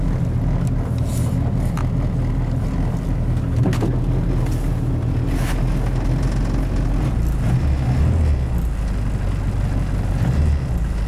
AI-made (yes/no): no